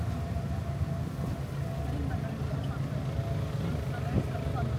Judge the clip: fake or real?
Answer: real